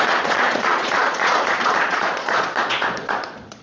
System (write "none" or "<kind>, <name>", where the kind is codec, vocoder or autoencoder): vocoder, Vocos